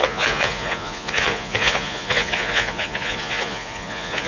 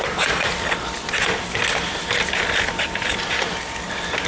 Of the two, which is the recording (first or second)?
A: second